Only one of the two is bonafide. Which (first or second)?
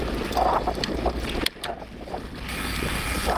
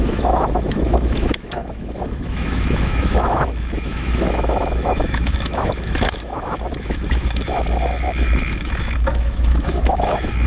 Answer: first